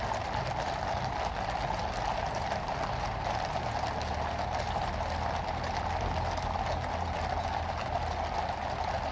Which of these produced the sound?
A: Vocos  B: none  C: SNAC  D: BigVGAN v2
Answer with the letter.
B